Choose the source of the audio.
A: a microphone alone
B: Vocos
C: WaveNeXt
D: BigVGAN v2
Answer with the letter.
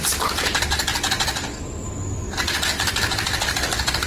A